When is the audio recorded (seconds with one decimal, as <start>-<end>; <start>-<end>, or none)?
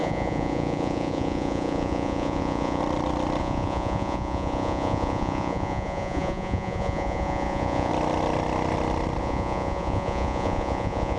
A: 2.8-3.4; 7.9-9.2